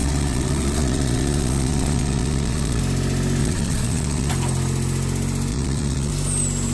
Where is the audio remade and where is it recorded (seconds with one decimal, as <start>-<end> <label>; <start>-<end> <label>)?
0.0-2.8 remade; 2.8-3.4 recorded; 3.4-4.3 remade; 4.3-5.5 recorded; 5.5-6.1 remade; 6.1-6.7 recorded